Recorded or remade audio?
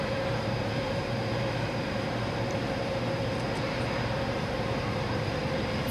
remade